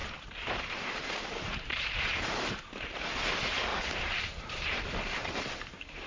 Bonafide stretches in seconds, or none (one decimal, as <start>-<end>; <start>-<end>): 2.5-3.7

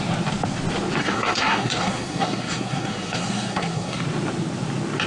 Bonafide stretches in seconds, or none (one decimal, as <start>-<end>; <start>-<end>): 0.0-1.0; 4.0-5.1

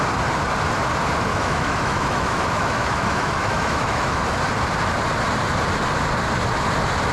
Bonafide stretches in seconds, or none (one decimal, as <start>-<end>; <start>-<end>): 0.0-1.3; 4.2-7.1

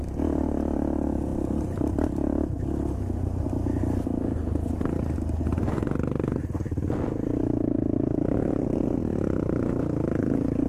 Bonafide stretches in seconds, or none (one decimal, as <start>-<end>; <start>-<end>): 0.0-1.3; 2.6-10.7

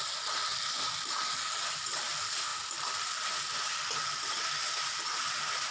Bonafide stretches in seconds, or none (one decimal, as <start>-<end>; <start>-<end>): 0.0-0.5; 1.6-2.5